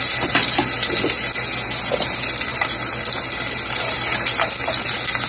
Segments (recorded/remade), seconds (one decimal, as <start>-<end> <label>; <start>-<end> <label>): 0.0-5.3 recorded

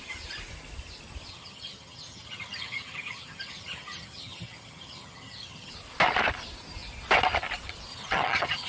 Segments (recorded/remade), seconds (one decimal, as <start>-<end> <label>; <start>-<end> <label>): 0.0-1.3 recorded; 1.3-5.7 remade; 5.7-7.9 recorded; 7.9-8.7 remade

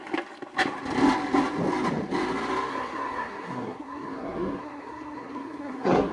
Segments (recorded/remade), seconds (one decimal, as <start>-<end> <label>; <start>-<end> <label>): 0.0-2.7 recorded; 2.7-6.1 remade

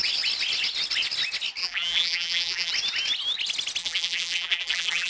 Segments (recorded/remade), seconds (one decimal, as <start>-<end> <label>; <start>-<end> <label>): 0.0-1.6 recorded; 1.6-2.7 remade; 2.7-3.8 recorded; 3.8-5.1 remade

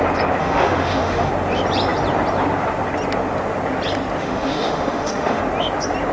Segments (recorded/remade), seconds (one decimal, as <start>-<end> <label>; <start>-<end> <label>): 0.0-0.4 recorded; 0.4-1.3 remade; 1.3-4.2 recorded; 4.2-5.4 remade; 5.4-6.1 recorded

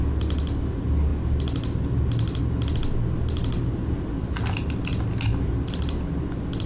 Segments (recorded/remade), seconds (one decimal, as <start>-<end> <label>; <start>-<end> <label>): 0.0-6.7 recorded

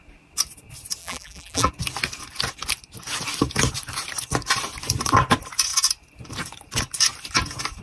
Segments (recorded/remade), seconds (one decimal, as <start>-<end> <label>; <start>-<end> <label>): 0.0-1.0 recorded; 1.0-1.7 remade; 1.7-7.8 recorded